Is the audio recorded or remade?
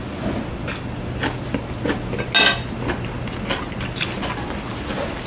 recorded